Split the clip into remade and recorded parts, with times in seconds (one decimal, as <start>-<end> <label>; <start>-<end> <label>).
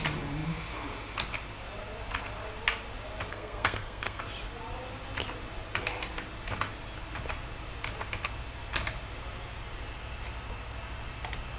0.0-3.3 recorded; 3.3-4.2 remade; 4.2-11.6 recorded